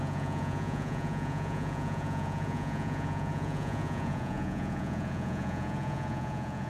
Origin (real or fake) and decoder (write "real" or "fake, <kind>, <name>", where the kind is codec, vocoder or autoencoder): fake, vocoder, Vocos